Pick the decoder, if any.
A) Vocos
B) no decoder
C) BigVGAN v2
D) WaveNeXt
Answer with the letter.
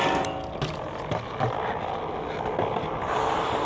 B